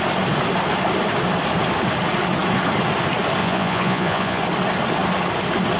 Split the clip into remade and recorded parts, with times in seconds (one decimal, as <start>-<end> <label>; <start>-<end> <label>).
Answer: 0.0-3.4 recorded; 3.4-4.4 remade; 4.4-5.8 recorded

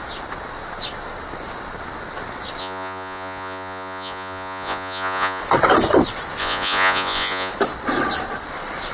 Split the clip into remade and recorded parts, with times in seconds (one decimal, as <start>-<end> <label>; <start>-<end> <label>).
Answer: 0.0-2.6 recorded; 2.6-5.4 remade; 5.4-6.4 recorded; 6.4-7.5 remade; 7.5-8.9 recorded

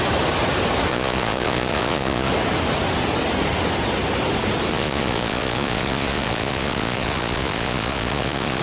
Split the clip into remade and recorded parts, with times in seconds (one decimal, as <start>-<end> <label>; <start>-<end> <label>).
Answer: 0.0-0.9 recorded; 0.9-2.3 remade; 2.3-4.7 recorded; 4.7-8.6 remade

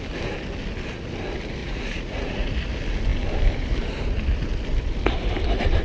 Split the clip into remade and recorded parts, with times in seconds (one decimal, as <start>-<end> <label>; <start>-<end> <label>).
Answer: 0.0-1.6 recorded; 1.6-2.5 remade; 2.5-5.8 recorded

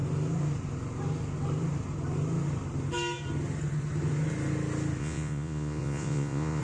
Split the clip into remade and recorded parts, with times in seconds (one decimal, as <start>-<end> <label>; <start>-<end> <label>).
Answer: 0.0-5.0 recorded; 5.0-6.6 remade

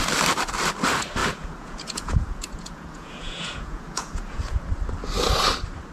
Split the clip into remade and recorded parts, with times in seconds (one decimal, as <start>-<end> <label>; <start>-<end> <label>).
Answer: 0.0-1.2 recorded; 1.2-4.7 remade; 4.7-5.9 recorded

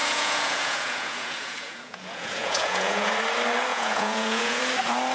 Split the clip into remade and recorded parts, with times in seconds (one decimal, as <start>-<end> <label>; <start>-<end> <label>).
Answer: 0.0-3.1 remade; 3.1-3.7 recorded; 3.7-4.6 remade; 4.6-5.1 recorded